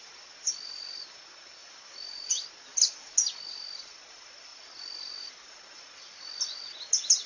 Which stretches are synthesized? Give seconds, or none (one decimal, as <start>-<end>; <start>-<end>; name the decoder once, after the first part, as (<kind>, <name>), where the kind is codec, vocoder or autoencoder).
none